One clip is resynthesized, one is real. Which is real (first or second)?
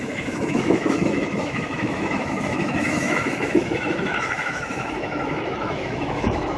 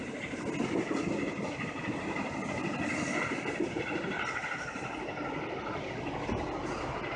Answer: second